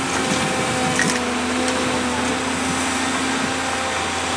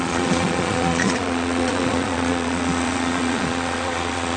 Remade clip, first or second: second